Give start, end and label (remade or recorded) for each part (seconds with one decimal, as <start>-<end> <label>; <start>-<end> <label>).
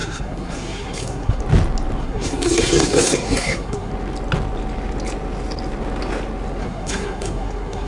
0.0-1.4 remade; 1.4-2.0 recorded; 2.0-3.9 remade; 3.9-6.6 recorded; 6.6-7.9 remade